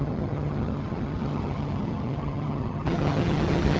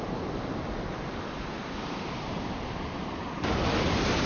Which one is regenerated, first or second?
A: first